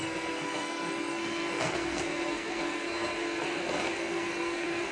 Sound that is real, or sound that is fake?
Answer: fake